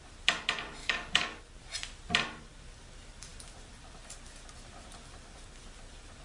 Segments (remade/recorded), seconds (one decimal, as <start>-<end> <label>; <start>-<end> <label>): 0.0-0.8 recorded; 0.8-1.4 remade; 1.4-6.2 recorded